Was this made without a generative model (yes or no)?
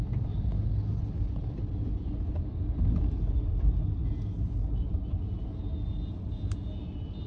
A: yes